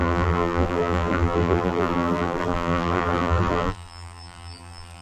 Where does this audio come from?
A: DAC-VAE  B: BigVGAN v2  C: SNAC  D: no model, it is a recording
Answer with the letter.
B